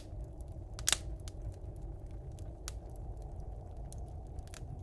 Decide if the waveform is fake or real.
real